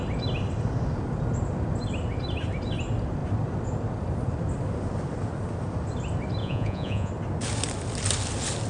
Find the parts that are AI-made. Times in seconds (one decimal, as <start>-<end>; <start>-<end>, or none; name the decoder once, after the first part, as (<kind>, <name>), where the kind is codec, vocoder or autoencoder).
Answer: 6.4-7.1 (vocoder, Vocos)